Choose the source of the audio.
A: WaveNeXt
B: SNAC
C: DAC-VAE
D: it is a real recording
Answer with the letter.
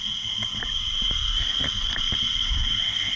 D